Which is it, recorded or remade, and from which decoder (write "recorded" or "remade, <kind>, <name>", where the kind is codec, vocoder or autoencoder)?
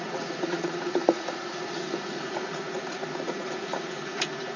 remade, vocoder, Vocos